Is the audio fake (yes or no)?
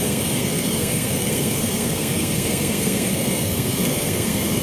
yes